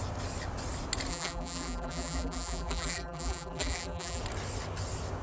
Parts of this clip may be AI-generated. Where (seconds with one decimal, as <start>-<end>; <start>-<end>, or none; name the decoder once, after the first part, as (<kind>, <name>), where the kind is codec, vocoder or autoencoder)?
1.1-4.2 (vocoder, BigVGAN v2)